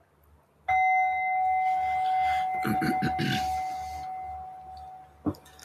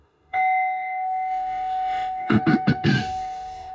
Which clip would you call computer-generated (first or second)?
second